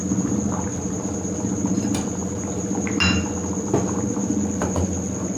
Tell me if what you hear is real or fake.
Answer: real